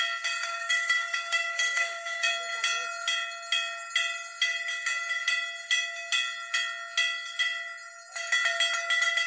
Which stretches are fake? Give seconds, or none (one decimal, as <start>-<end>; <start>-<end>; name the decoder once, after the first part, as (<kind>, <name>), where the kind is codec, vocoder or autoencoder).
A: 0.4-2.3 (codec, DAC)